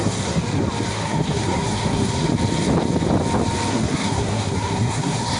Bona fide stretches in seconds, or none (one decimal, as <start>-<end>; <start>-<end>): 0.4-0.9; 2.3-3.7